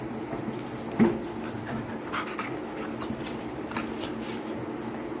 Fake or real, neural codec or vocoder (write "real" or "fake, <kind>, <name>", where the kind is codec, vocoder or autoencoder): real